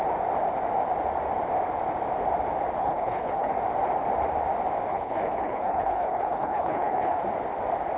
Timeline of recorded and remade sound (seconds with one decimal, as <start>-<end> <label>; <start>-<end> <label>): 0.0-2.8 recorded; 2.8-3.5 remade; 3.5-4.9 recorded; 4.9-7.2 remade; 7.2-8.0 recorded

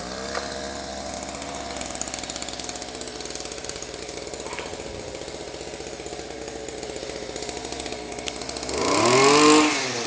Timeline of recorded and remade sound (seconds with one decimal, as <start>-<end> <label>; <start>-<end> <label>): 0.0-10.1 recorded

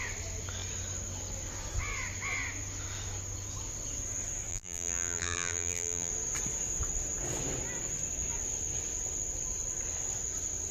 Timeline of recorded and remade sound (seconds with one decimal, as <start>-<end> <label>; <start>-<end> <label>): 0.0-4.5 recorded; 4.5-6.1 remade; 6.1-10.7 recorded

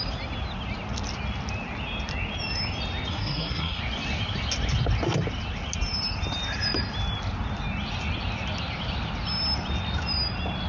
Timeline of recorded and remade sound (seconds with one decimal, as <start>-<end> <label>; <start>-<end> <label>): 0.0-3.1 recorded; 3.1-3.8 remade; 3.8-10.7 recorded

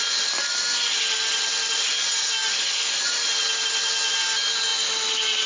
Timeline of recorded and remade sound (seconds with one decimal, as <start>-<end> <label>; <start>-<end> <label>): 0.0-5.5 recorded

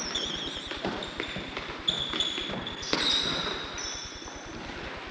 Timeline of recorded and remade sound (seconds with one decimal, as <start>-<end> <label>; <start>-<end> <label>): 0.0-5.1 recorded

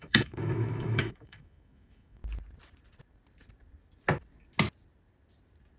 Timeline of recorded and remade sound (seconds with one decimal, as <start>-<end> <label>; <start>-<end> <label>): 0.0-2.2 remade; 2.2-5.8 recorded